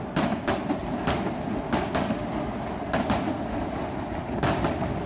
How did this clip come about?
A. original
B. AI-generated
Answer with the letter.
A